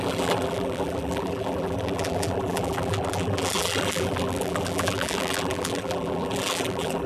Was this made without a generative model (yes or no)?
no